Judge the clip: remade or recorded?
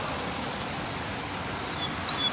recorded